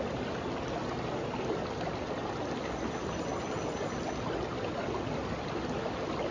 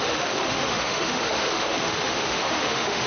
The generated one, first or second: second